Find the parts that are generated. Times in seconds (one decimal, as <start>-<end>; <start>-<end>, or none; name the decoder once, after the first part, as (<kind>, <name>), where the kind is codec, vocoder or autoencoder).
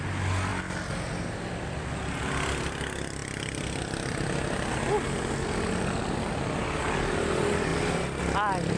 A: none